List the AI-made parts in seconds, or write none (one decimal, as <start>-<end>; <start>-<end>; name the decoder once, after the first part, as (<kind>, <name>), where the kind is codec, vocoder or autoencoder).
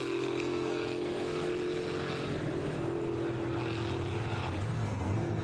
0.0-1.5 (codec, SNAC); 4.6-5.4